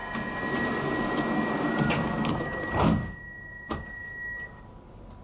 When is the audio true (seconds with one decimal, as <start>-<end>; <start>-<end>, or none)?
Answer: 0.0-5.2